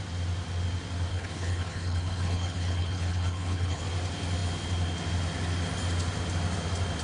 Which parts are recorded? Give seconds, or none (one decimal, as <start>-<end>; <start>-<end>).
0.0-1.1; 3.8-7.0